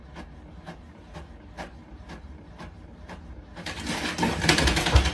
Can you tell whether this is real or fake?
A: fake